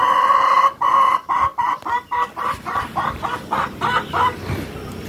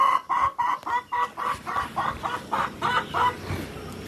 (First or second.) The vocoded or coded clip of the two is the first